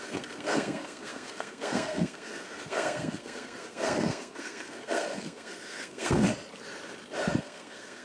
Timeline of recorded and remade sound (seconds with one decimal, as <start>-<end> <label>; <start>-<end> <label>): 0.0-6.3 remade; 6.3-7.4 recorded; 7.4-8.0 remade